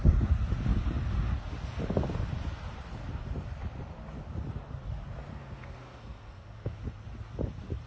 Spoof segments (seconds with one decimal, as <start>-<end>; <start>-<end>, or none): 5.3-6.8